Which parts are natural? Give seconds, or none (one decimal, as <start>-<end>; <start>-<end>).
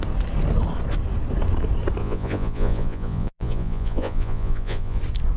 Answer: 0.0-2.0; 5.0-5.4